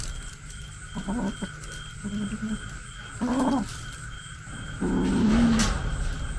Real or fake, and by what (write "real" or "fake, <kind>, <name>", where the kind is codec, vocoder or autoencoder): real